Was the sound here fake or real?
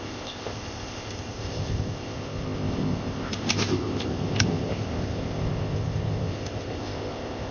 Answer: fake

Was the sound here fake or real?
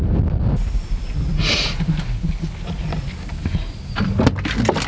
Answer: real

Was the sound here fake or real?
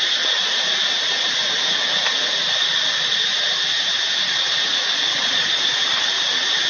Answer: real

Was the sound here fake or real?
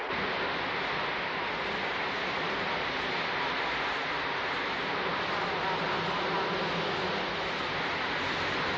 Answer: real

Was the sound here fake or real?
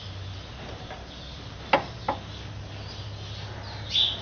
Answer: real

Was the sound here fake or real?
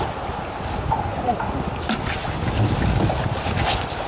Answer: real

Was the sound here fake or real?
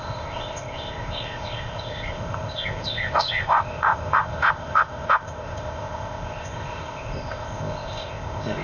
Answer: fake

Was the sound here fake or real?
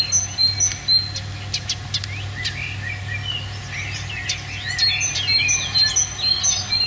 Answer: real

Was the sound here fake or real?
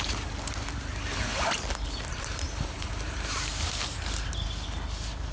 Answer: real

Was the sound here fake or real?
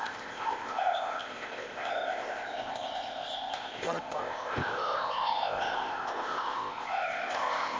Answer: fake